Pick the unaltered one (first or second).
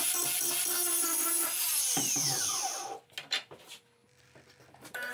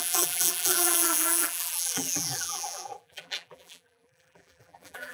first